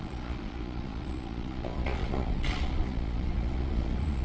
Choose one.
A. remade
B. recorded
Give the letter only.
A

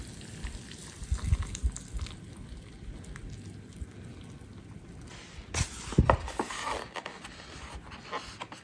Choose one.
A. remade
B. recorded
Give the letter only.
B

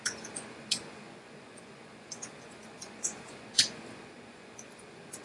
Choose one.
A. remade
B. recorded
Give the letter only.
A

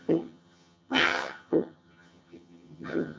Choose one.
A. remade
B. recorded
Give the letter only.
A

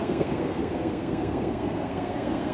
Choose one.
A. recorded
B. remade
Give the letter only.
B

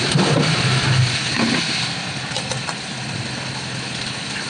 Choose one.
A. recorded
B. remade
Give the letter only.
A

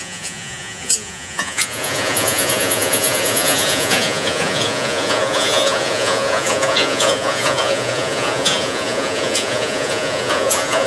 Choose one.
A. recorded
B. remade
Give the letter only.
B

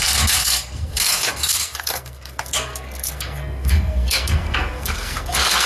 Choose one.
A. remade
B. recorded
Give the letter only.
A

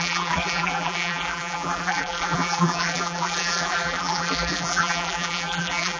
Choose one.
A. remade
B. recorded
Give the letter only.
A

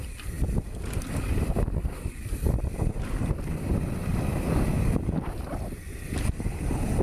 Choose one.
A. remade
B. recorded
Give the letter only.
B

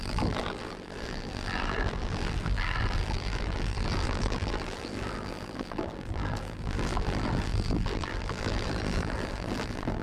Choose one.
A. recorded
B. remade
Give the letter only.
B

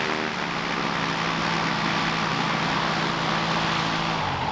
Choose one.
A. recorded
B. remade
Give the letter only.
A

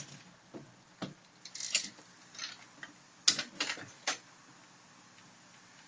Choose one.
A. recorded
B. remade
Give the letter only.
A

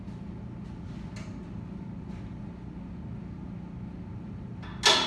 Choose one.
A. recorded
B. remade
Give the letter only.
A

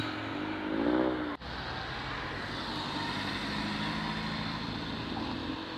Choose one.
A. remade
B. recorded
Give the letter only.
B